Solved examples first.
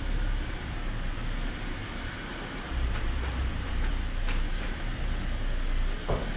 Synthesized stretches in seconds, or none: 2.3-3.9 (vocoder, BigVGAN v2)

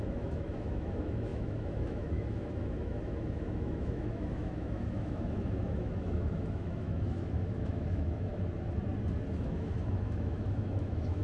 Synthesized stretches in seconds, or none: 0.0-8.3 (autoencoder, DAC-VAE); 9.3-11.2

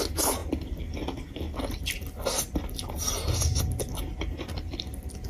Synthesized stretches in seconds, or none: none

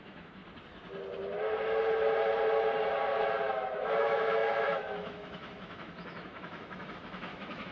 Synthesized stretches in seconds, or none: 0.0-0.4 (autoencoder, DAC-VAE); 3.7-7.7

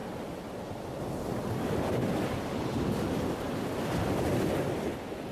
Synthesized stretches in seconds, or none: 0.0-1.0 (vocoder, BigVGAN v2); 2.0-3.8

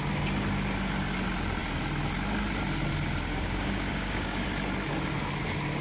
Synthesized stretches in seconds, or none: 3.3-4.4 (codec, DAC)